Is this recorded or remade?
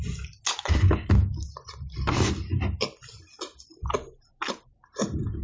recorded